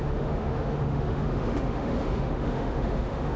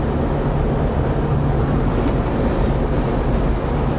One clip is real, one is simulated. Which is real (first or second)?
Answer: second